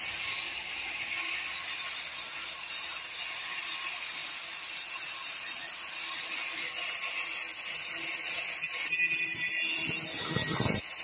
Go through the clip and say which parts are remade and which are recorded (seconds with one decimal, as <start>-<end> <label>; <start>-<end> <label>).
0.0-4.2 recorded; 4.2-4.9 remade; 4.9-11.0 recorded